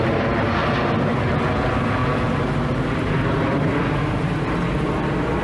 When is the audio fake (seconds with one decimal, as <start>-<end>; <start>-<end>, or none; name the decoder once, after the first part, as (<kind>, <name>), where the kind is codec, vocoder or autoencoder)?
none